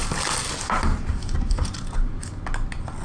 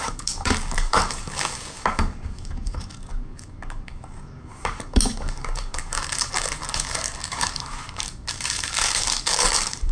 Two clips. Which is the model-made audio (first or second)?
second